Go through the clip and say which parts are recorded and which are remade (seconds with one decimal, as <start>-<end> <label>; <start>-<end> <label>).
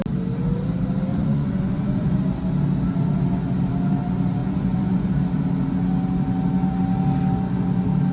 0.0-1.1 recorded; 1.1-2.2 remade; 2.2-4.4 recorded; 4.4-5.1 remade; 5.1-8.1 recorded